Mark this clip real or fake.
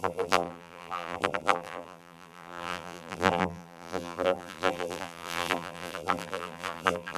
fake